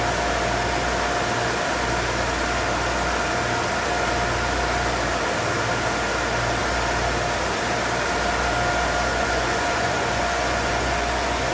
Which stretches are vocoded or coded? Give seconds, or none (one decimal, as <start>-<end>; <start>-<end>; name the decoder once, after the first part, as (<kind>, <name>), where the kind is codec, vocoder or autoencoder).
9.1-11.5 (vocoder, Vocos)